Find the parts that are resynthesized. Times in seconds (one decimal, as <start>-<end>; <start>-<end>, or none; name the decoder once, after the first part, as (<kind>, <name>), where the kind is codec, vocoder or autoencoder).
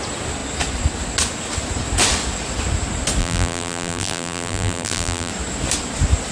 3.2-5.3 (vocoder, BigVGAN v2)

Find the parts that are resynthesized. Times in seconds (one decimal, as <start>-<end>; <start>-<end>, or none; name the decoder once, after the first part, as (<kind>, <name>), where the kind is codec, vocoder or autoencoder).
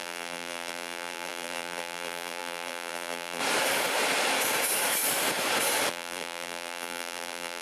0.0-3.4 (vocoder, BigVGAN v2); 5.9-7.6